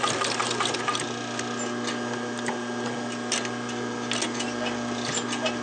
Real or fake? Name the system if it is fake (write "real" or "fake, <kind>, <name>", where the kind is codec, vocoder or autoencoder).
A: real